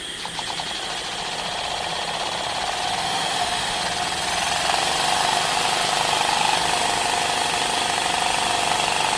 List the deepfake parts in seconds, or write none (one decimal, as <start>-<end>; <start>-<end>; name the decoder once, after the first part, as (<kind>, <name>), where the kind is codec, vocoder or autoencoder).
3.0-3.8 (autoencoder, DAC-VAE)